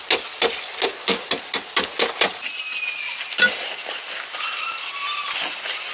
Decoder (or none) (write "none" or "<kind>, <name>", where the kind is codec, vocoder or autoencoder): none